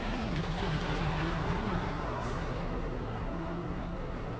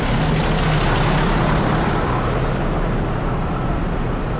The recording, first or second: second